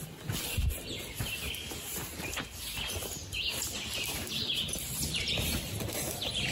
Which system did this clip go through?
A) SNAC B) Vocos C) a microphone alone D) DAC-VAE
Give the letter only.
C